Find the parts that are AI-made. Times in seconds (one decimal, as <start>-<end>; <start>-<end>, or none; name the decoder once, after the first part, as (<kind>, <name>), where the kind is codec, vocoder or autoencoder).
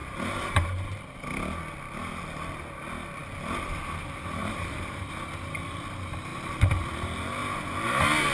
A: 0.0-1.1 (vocoder, BigVGAN v2); 4.4-5.1